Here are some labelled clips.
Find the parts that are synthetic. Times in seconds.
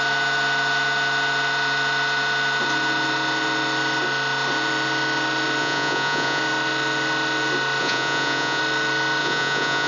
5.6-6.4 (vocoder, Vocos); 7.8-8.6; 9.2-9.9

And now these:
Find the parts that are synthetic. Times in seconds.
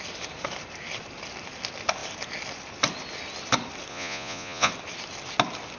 3.9-4.7 (vocoder, Vocos)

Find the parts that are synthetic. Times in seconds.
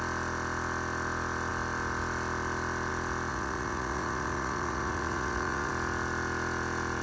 3.3-5.7 (vocoder, Vocos)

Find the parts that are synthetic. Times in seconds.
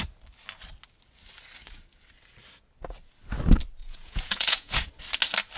3.8-4.9 (vocoder, Vocos)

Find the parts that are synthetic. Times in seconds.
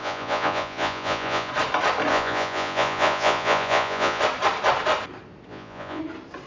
0.0-1.5 (vocoder, Vocos); 2.1-4.2; 5.5-6.0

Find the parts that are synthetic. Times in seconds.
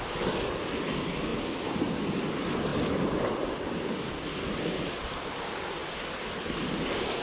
none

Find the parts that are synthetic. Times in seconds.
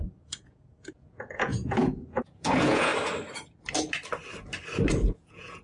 0.0-2.9 (vocoder, Vocos); 5.1-5.6